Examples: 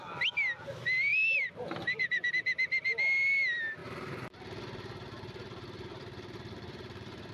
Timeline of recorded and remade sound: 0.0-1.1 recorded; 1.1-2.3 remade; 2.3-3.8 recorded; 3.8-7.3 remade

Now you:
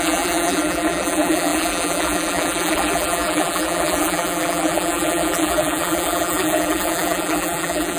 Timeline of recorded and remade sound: 0.0-8.0 remade

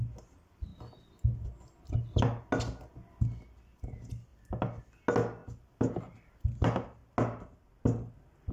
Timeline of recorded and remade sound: 0.0-8.5 recorded

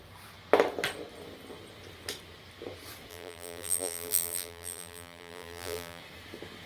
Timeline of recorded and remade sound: 0.0-3.1 recorded; 3.1-6.0 remade; 6.0-6.7 recorded

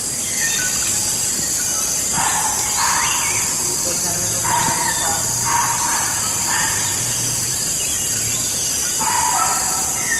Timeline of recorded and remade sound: 0.0-5.1 recorded; 5.1-7.8 remade; 7.8-10.2 recorded

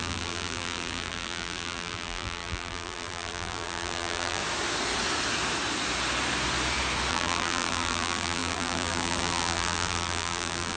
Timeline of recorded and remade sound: 0.0-4.4 remade; 4.4-7.1 recorded; 7.1-10.8 remade

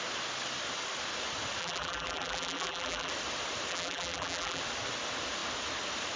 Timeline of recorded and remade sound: 0.0-1.6 recorded; 1.6-3.1 remade; 3.1-3.7 recorded; 3.7-4.6 remade; 4.6-6.2 recorded